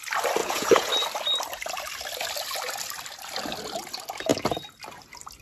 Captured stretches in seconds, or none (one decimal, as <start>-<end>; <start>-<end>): 0.0-0.4; 0.9-5.4